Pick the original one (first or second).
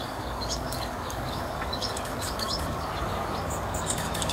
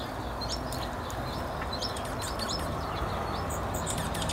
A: second